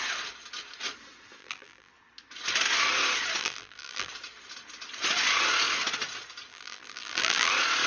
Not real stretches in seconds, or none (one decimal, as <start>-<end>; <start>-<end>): 1.4-1.9; 3.4-4.1; 6.5-7.5